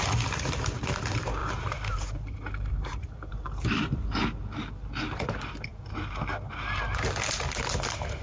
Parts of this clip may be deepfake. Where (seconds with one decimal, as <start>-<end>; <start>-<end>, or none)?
1.4-3.3